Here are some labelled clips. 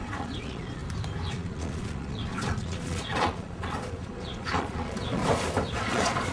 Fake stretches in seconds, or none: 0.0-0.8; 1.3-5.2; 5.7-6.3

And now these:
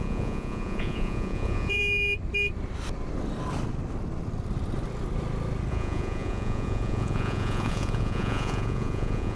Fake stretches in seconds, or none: 0.0-1.8; 5.7-9.3